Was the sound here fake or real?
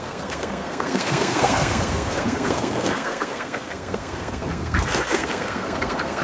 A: fake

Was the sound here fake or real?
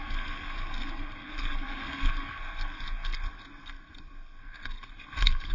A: fake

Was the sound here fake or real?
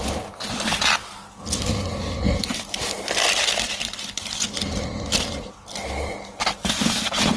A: real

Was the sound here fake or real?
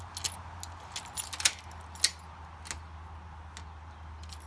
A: real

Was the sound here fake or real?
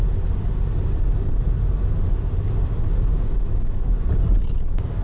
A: real